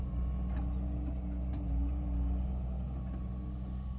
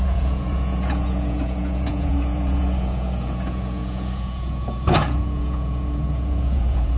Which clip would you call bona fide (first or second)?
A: first